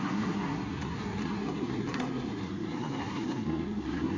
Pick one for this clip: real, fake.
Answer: fake